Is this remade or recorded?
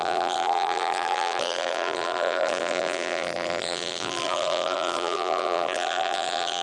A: remade